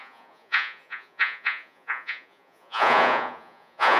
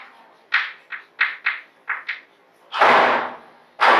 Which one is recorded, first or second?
second